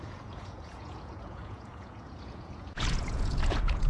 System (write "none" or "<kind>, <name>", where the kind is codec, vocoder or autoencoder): vocoder, Vocos